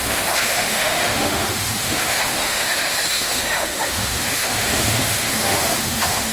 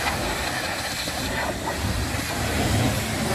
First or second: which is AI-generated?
first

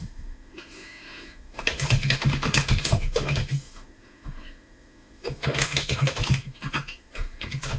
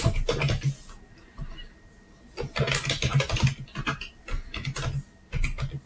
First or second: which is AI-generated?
first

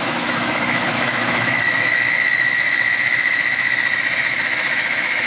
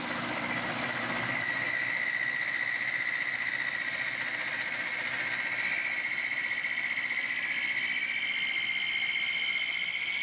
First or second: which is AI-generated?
first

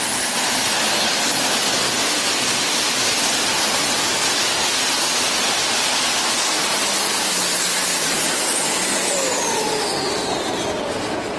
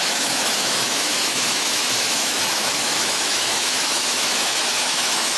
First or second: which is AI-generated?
second